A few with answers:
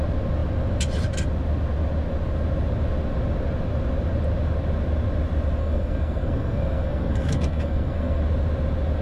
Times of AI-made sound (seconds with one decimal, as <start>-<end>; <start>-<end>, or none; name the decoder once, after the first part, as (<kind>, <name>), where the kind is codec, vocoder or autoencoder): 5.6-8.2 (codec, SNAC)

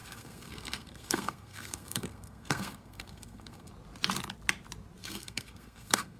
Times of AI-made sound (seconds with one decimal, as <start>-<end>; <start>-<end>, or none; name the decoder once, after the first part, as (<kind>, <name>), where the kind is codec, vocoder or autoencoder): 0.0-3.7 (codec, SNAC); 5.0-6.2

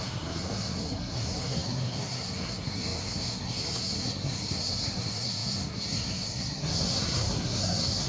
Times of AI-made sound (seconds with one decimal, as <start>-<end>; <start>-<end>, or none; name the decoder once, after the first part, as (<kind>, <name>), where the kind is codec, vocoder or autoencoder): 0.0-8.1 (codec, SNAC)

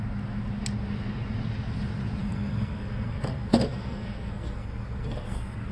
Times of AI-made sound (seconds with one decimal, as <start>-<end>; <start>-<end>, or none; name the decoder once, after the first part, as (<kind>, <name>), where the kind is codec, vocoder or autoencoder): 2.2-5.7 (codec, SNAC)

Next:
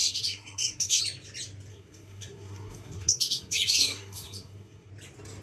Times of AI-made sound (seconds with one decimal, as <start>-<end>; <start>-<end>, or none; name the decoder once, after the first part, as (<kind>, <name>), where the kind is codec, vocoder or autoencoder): 0.0-1.0 (codec, SNAC); 1.7-4.9

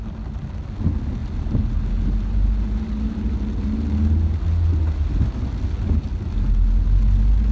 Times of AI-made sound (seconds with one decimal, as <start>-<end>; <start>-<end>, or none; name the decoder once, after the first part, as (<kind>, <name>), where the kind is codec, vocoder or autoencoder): none